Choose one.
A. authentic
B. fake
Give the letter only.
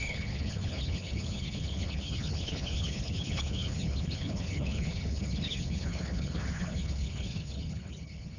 B